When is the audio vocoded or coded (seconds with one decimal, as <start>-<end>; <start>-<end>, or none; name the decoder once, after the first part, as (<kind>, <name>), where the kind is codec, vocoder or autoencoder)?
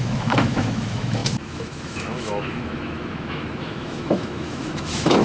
0.0-5.2 (autoencoder, DAC-VAE)